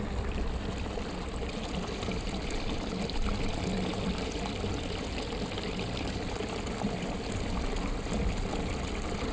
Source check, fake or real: real